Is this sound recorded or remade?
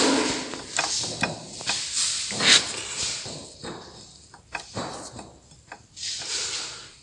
recorded